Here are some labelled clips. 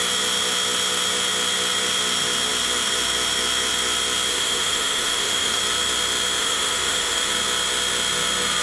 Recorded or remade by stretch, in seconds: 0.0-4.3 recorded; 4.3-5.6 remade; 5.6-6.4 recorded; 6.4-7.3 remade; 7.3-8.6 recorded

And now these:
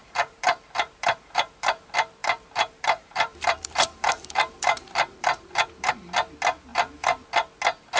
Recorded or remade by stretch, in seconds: 0.0-1.7 remade; 1.7-2.2 recorded; 2.2-5.9 remade; 5.9-6.7 recorded; 6.7-7.3 remade; 7.3-8.0 recorded

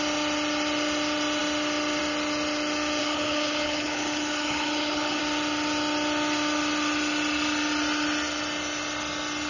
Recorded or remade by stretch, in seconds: 0.0-3.0 recorded; 3.0-5.2 remade; 5.2-9.5 recorded

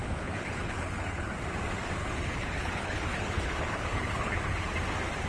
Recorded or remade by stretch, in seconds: 0.0-1.3 remade; 1.3-2.0 recorded; 2.0-4.7 remade; 4.7-5.3 recorded

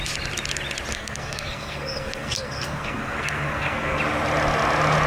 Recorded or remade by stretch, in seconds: 0.0-0.9 recorded; 0.9-4.0 remade; 4.0-5.1 recorded